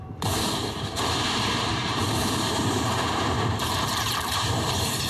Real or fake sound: fake